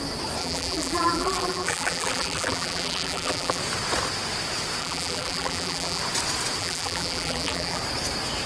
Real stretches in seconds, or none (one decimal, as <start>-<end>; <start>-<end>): 0.0-0.4; 3.6-4.8; 6.0-6.6; 7.8-8.5